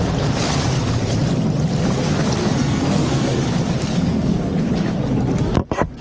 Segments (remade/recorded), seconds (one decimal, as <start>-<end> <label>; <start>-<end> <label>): 0.0-2.4 recorded; 2.4-3.5 remade; 3.5-3.9 recorded; 3.9-4.5 remade; 4.5-6.0 recorded